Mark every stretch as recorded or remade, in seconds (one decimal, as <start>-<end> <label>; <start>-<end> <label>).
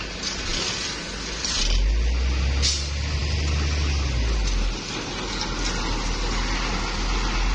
0.0-7.5 recorded